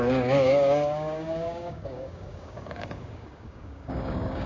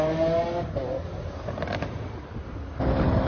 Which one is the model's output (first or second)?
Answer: first